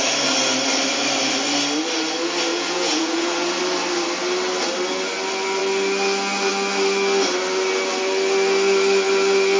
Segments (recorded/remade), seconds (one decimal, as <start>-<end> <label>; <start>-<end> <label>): 0.0-2.5 recorded; 2.5-3.6 remade; 3.6-9.6 recorded